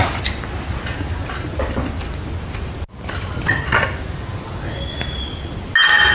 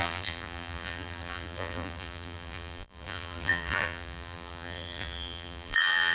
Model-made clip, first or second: second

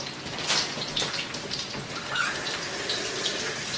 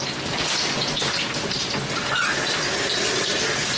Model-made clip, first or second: first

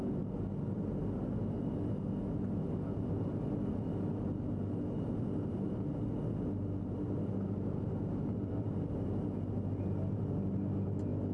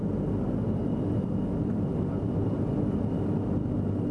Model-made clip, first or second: second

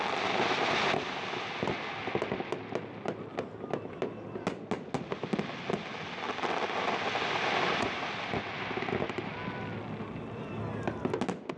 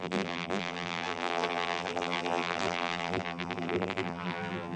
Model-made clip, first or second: second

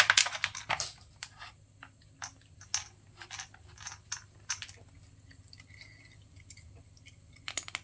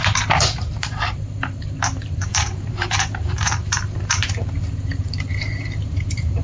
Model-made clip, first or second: second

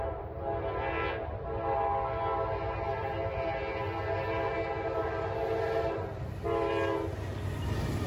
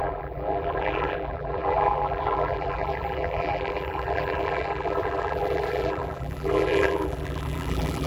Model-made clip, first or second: second